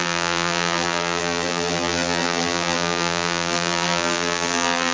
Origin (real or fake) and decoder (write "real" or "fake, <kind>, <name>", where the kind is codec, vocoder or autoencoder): fake, vocoder, BigVGAN v2